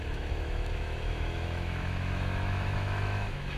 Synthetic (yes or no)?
yes